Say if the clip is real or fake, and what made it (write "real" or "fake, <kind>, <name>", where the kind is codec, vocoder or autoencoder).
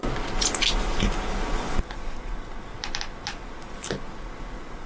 real